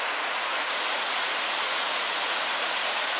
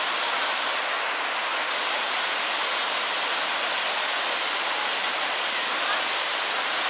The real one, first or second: second